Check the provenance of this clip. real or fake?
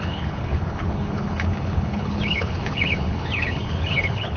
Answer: fake